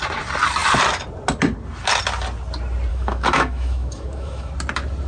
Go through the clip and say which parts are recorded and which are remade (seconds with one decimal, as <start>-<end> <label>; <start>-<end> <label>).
0.0-2.9 recorded; 2.9-4.5 remade; 4.5-5.1 recorded